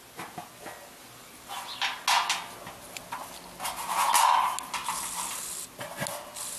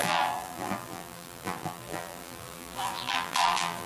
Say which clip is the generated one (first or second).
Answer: second